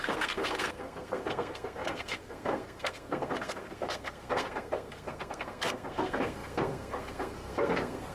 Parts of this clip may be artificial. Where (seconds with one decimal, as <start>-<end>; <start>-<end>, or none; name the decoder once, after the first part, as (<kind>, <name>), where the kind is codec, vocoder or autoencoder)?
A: 0.0-8.1 (codec, SNAC)